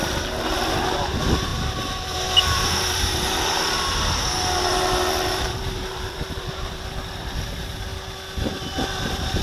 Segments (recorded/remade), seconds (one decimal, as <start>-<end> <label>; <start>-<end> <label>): 0.0-7.9 remade; 7.9-9.0 recorded; 9.0-9.4 remade